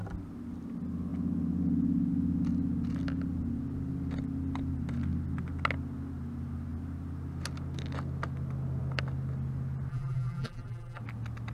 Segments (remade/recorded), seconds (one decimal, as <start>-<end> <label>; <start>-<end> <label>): 0.0-9.9 recorded; 9.9-11.0 remade; 11.0-11.5 recorded